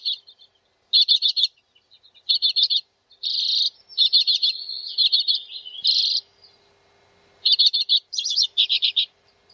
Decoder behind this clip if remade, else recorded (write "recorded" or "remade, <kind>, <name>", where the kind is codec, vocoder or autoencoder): recorded